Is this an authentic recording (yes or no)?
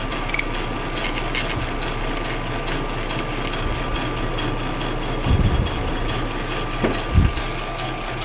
yes